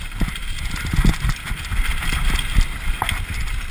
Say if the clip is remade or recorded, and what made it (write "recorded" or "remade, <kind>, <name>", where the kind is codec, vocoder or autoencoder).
recorded